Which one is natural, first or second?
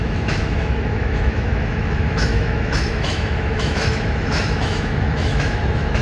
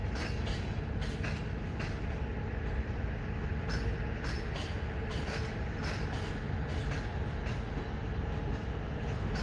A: second